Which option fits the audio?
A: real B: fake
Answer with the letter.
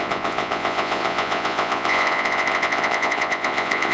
B